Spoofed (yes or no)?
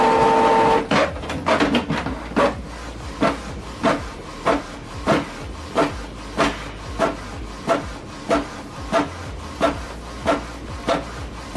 no